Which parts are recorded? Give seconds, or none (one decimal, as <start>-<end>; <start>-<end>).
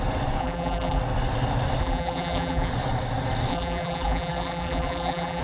0.0-0.4; 1.0-1.8; 2.7-3.5